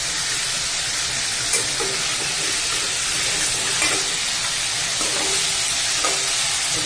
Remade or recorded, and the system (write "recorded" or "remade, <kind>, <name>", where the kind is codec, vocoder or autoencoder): recorded